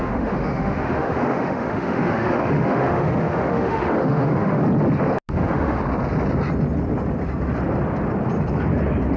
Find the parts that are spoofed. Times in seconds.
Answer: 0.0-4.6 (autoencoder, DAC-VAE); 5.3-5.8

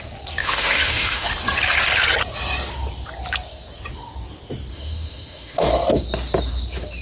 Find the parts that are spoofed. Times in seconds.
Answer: 0.4-1.3 (autoencoder, DAC-VAE); 4.7-5.7

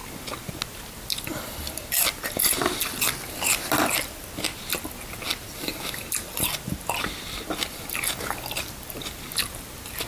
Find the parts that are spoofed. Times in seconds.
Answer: none

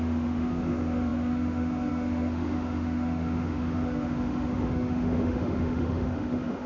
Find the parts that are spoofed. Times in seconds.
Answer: 0.0-6.7 (autoencoder, DAC-VAE)

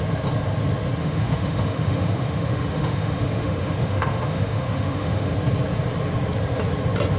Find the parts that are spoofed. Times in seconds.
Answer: 1.0-5.3 (autoencoder, DAC-VAE)

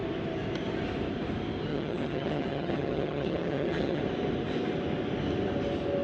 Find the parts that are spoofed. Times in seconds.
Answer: 1.7-4.0 (vocoder, HiFi-GAN)

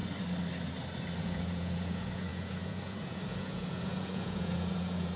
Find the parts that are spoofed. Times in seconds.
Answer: 1.2-5.2 (vocoder, Vocos)

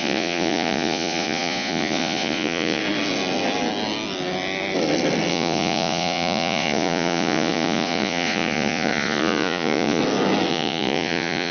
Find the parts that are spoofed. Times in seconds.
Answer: 0.0-2.8 (vocoder, Vocos); 5.3-10.0; 10.5-11.5